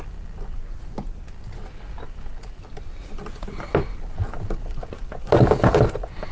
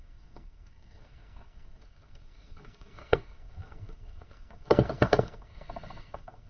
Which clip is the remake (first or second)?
second